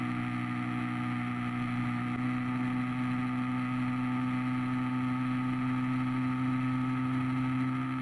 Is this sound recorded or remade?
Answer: recorded